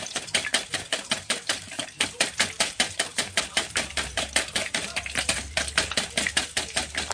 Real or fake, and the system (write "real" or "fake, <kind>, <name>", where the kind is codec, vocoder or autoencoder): fake, vocoder, BigVGAN v2